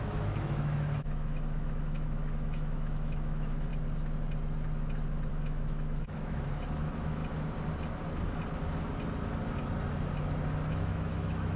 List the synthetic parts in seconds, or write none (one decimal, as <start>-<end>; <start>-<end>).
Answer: 0.0-3.7; 5.3-7.2; 10.7-11.6